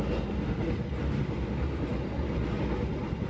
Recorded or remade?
recorded